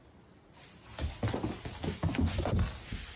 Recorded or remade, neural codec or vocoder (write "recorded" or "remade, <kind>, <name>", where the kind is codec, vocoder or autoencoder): recorded